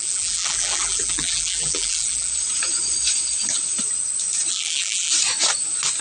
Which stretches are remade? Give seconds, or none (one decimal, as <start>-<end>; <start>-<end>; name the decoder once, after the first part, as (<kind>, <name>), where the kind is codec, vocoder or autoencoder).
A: 0.0-2.3 (vocoder, BigVGAN v2); 4.5-5.1